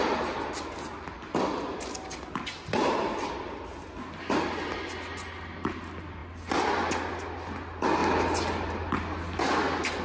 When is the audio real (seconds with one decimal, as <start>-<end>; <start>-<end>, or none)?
0.0-10.0